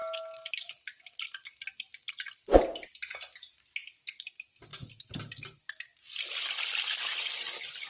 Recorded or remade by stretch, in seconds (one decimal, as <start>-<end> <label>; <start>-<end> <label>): 0.0-7.9 recorded